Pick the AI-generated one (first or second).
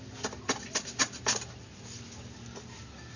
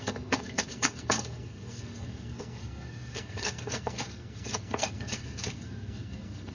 second